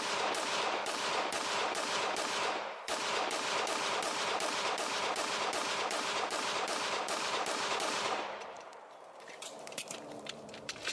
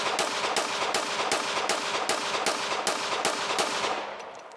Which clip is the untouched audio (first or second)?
second